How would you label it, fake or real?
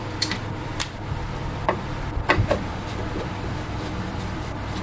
fake